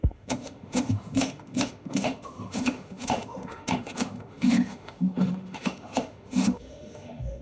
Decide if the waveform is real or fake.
fake